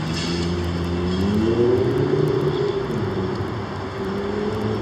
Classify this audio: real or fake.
real